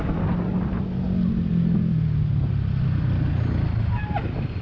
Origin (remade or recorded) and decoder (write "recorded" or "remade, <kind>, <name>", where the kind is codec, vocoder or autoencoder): recorded